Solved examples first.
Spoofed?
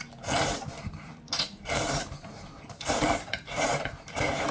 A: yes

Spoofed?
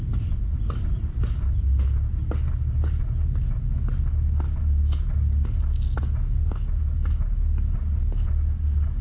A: no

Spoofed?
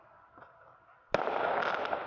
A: no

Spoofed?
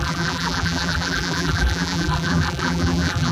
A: yes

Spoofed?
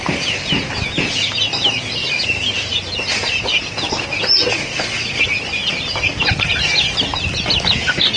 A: no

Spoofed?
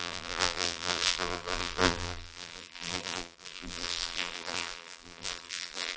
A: yes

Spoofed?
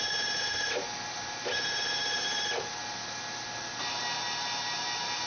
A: no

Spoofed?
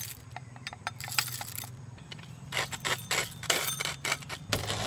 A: yes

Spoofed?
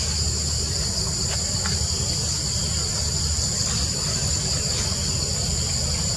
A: no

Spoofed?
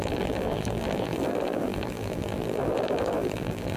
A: yes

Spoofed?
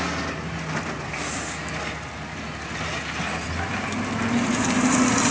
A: no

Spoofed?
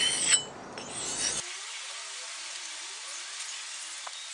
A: no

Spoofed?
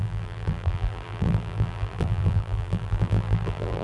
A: yes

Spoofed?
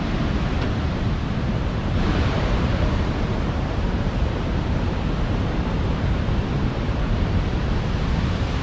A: yes